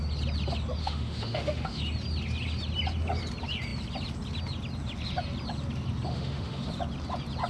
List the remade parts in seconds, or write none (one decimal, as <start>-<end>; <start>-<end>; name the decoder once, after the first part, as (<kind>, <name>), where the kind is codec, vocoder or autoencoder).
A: 0.8-1.8 (autoencoder, DAC-VAE); 6.1-6.7